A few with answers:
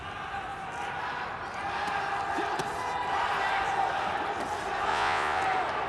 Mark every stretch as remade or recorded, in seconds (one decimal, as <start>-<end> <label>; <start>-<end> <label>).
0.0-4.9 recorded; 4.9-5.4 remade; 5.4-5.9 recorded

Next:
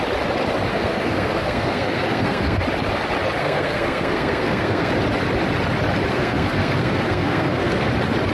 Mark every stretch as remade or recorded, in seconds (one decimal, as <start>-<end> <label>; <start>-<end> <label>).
0.0-0.7 recorded; 0.7-2.6 remade; 2.6-3.4 recorded; 3.4-4.9 remade; 4.9-6.1 recorded; 6.1-7.9 remade; 7.9-8.3 recorded

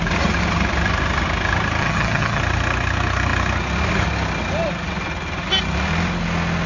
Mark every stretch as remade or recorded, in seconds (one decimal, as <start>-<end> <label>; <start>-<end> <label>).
0.0-1.8 recorded; 1.8-2.4 remade; 2.4-6.7 recorded

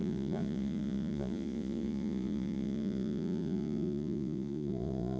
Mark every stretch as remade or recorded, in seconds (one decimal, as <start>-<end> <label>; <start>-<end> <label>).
0.0-5.2 remade

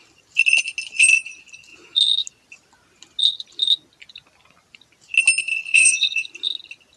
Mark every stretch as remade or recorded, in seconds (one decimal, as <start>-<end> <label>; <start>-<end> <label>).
0.0-5.4 recorded; 5.4-6.2 remade; 6.2-7.0 recorded

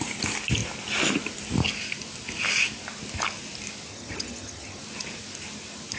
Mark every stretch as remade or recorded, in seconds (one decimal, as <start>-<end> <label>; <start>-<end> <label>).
0.0-3.9 recorded; 3.9-4.8 remade; 4.8-6.0 recorded